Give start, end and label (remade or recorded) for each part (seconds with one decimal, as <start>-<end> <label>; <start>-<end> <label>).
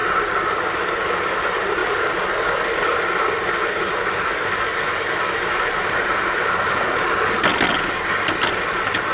0.0-9.1 recorded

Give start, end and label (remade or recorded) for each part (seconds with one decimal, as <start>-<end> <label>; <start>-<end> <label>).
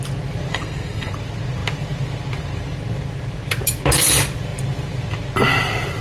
0.0-0.5 recorded; 0.5-1.1 remade; 1.1-6.0 recorded